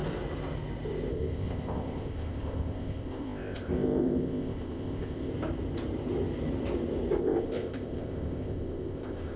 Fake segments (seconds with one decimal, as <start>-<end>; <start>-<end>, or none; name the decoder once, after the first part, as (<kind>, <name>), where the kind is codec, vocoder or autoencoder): 1.1-5.3 (codec, ZipCodec); 7.2-9.4